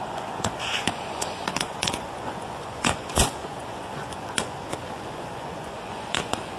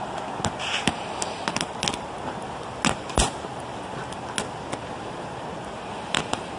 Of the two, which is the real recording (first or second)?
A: second